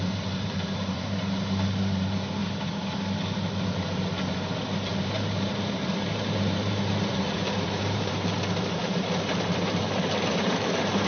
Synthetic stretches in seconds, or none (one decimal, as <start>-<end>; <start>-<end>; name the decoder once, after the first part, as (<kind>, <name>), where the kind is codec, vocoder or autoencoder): 0.0-2.4 (vocoder, BigVGAN v2); 4.8-11.1